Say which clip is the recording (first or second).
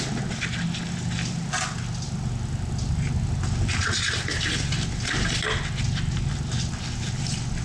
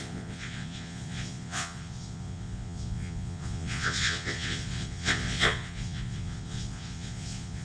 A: first